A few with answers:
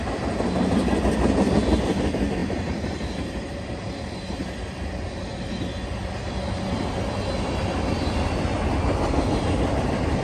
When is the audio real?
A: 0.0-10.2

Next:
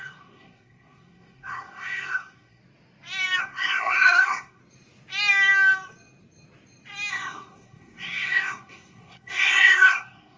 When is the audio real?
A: 2.6-3.4; 4.6-7.1

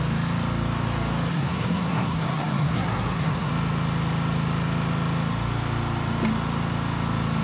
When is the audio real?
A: 0.0-1.3; 3.5-7.4

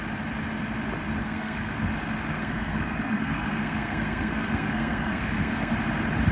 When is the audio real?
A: 0.0-1.2; 1.7-2.3; 5.7-6.3

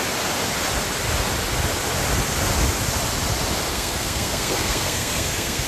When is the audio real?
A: 0.0-3.7

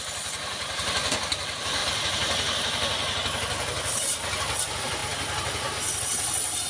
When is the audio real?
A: 0.0-6.7